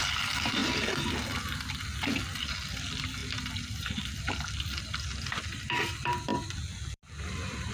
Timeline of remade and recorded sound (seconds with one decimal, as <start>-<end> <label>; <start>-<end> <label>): 0.0-0.6 remade; 0.6-2.2 recorded; 2.2-7.7 remade